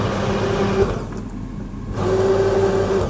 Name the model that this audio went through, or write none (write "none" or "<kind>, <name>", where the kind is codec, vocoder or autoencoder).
none